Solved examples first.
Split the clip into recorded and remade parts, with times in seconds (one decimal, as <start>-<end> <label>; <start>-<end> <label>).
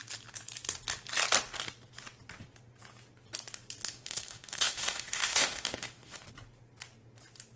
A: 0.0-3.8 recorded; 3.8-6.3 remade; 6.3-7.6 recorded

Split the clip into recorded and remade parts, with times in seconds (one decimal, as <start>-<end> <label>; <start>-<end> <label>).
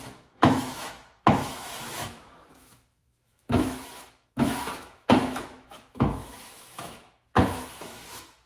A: 0.0-8.5 remade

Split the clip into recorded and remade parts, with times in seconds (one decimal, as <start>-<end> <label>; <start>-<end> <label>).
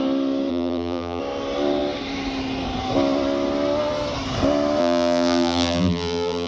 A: 0.0-0.5 recorded; 0.5-1.2 remade; 1.2-4.8 recorded; 4.8-6.5 remade